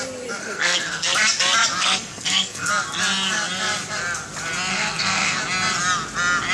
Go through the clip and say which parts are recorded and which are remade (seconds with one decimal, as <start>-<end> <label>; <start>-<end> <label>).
0.0-0.4 recorded; 0.4-1.1 remade; 1.1-1.8 recorded; 1.8-2.7 remade; 2.7-4.7 recorded; 4.7-5.4 remade; 5.4-6.5 recorded